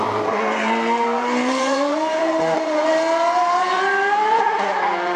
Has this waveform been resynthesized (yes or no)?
yes